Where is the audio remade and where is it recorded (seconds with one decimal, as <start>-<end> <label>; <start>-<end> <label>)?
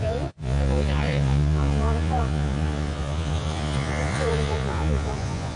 0.0-5.6 remade